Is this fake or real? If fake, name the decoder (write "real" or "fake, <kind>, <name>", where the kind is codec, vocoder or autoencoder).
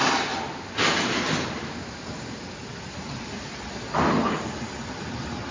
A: real